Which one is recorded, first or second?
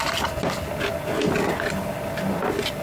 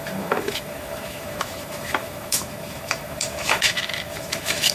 first